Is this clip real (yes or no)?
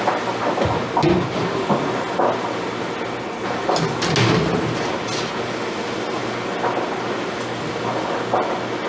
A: yes